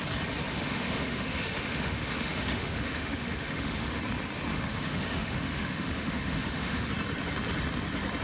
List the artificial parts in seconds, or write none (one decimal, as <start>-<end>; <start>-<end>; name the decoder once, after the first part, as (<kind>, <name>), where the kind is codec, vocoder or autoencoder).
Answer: 0.5-4.0 (autoencoder, DAC-VAE); 4.5-6.9